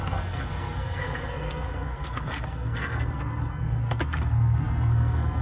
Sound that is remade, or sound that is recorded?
remade